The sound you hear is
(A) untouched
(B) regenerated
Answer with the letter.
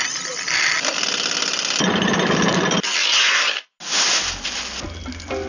A